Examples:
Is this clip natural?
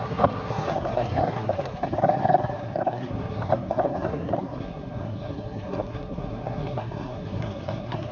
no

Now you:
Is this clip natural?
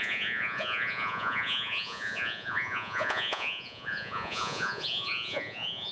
no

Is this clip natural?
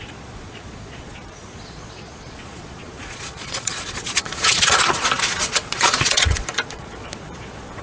no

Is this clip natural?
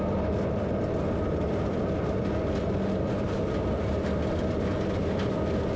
yes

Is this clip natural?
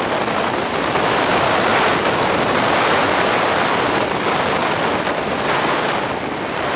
yes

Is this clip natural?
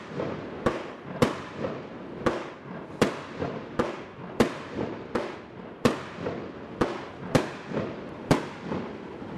no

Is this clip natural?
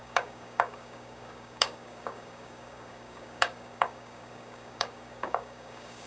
no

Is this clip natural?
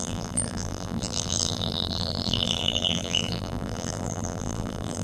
no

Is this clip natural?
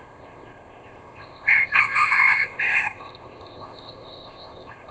no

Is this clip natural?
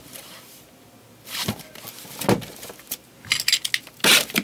yes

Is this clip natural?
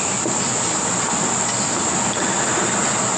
yes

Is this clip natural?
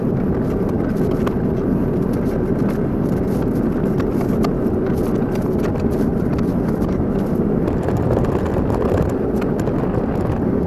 yes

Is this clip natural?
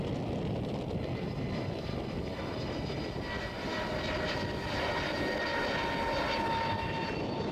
yes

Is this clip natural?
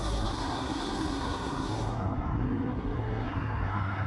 no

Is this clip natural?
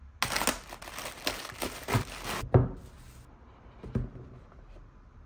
yes